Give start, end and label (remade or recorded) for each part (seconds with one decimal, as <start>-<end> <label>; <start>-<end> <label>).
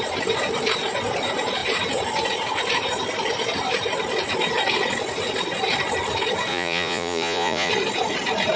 0.0-6.5 recorded; 6.5-7.7 remade; 7.7-8.6 recorded